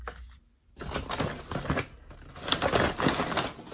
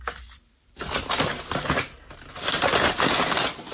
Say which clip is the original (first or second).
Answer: first